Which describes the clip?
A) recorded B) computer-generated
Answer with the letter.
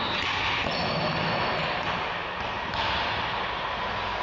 A